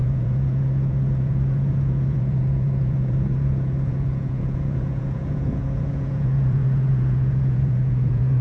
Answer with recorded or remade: remade